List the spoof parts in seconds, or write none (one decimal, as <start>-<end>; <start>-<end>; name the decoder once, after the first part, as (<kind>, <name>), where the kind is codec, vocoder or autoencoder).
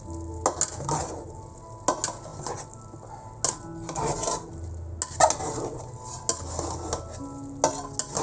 none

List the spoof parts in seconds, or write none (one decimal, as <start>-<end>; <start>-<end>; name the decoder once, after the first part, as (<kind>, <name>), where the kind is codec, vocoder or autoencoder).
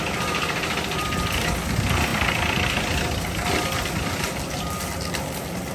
none